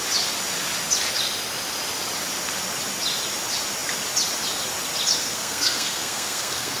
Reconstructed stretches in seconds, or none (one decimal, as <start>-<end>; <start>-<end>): 5.2-6.8